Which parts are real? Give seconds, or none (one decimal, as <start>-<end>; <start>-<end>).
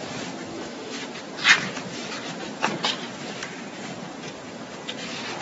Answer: 0.0-0.5; 1.0-5.4